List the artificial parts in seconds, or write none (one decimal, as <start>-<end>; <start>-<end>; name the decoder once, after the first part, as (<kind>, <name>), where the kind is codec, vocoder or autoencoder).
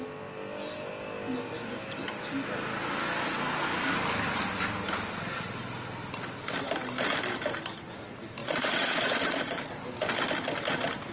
8.4-9.7 (vocoder, Vocos)